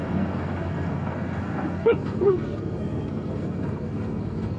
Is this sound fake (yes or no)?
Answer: yes